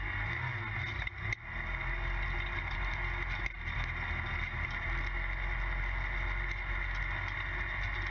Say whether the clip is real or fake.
real